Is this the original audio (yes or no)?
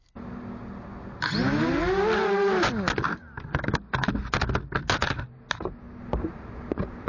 yes